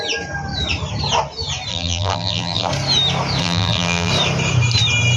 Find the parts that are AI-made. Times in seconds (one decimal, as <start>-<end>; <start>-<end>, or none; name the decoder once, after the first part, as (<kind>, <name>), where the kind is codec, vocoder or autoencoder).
1.7-2.7 (vocoder, BigVGAN v2); 3.4-4.1